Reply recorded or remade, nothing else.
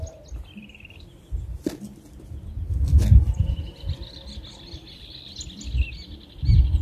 recorded